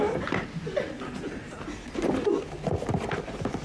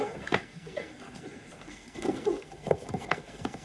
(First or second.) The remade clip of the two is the second